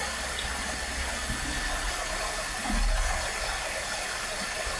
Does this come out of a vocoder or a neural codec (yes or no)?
no